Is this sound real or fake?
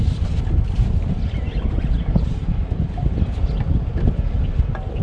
real